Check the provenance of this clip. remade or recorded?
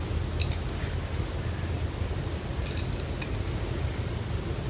recorded